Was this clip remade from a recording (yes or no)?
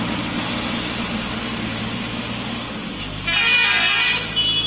no